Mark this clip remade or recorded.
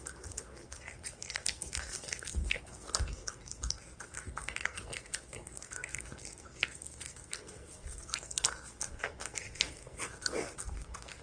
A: remade